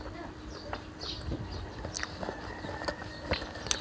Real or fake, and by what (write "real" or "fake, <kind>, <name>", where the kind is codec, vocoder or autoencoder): real